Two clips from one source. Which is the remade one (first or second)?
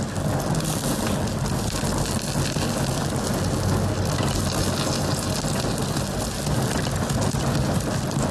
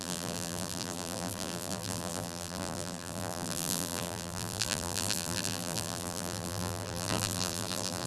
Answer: second